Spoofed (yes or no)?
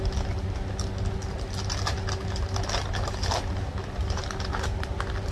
no